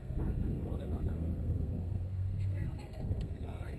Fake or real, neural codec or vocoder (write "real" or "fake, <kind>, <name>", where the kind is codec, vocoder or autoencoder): fake, codec, SNAC